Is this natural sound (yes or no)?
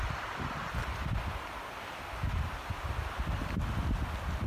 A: yes